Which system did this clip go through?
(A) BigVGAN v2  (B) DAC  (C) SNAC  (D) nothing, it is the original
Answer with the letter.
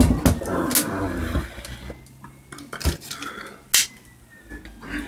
D